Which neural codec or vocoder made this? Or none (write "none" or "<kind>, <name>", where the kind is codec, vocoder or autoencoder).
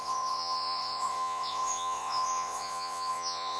vocoder, Vocos